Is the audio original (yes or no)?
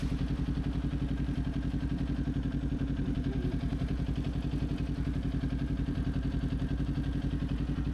yes